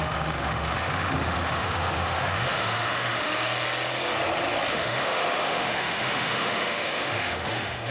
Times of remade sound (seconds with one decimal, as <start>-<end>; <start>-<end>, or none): 0.0-3.3; 4.7-7.9